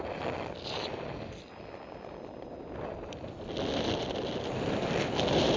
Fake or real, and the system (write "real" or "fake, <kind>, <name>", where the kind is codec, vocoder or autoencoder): real